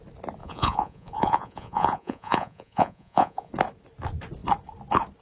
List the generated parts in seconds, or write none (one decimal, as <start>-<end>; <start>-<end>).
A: 0.4-3.5